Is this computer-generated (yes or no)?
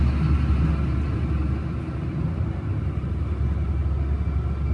no